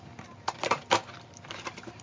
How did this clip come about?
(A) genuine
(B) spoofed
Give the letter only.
A